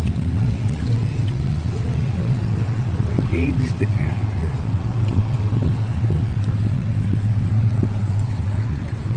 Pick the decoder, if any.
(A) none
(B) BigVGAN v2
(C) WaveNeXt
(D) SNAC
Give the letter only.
C